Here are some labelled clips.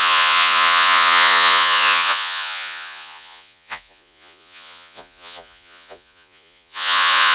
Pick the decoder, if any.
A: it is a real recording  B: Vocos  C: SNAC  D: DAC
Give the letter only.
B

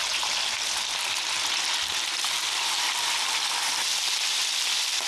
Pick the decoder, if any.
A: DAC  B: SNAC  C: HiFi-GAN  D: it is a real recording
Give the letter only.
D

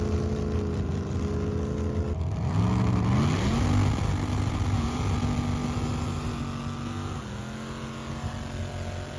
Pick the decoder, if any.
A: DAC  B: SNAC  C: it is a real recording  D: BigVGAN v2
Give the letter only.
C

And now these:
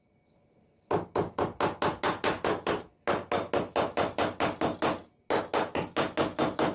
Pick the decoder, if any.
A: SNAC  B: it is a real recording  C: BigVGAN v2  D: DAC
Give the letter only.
B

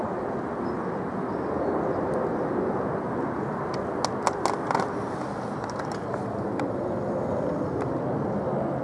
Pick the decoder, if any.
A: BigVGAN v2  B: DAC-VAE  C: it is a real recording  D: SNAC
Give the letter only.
C